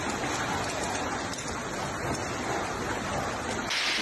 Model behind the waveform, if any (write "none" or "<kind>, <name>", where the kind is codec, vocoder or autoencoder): none